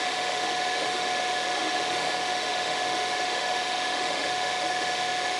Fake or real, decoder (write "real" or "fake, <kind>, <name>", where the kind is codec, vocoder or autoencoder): fake, autoencoder, DAC-VAE